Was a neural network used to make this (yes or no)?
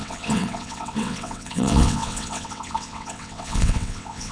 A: yes